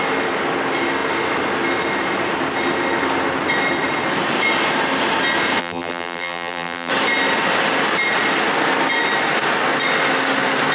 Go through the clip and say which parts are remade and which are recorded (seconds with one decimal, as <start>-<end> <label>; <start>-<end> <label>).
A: 0.0-5.6 recorded; 5.6-6.9 remade; 6.9-10.7 recorded